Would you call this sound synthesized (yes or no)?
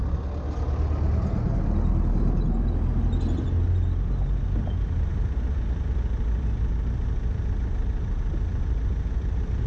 no